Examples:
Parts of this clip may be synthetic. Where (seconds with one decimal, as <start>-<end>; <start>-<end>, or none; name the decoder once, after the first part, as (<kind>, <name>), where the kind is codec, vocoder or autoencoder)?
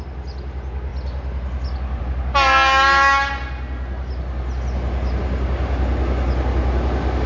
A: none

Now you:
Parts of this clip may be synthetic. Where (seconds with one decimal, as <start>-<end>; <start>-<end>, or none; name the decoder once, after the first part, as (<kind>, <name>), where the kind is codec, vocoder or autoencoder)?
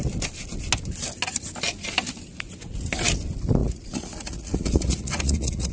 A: 3.6-5.7 (vocoder, Vocos)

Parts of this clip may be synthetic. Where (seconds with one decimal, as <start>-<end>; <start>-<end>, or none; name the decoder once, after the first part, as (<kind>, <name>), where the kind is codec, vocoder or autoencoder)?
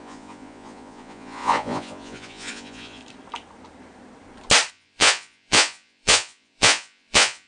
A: 0.0-3.0 (vocoder, Vocos); 4.7-7.5